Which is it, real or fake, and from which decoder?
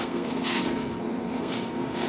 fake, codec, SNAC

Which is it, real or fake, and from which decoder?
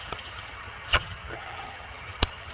fake, vocoder, HiFi-GAN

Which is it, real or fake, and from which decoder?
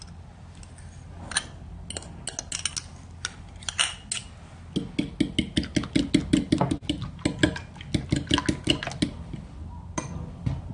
real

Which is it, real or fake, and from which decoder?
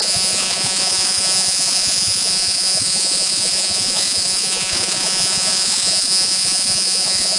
fake, vocoder, Vocos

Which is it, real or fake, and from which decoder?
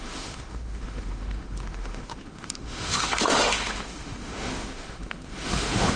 fake, autoencoder, DAC-VAE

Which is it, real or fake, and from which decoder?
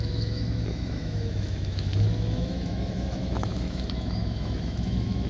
fake, autoencoder, DAC-VAE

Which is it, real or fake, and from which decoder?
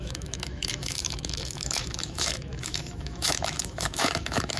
fake, autoencoder, DAC-VAE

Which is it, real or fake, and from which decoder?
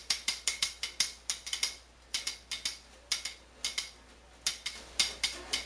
real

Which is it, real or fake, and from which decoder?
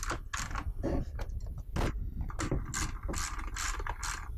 real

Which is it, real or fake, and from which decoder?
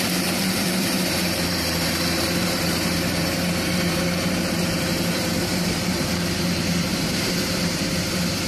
fake, vocoder, BigVGAN v2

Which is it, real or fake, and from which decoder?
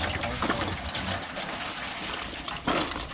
real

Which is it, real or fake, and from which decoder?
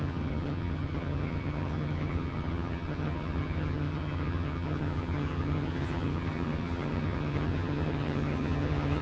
fake, vocoder, HiFi-GAN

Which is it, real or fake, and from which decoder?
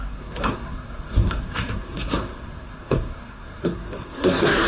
fake, codec, SNAC